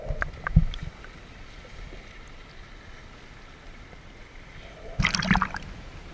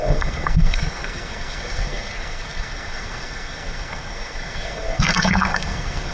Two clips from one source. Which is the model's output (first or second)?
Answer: second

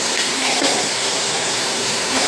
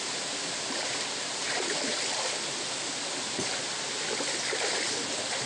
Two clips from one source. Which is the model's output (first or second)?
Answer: first